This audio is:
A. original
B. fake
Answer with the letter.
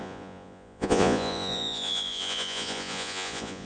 B